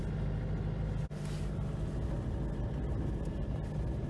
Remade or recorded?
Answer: recorded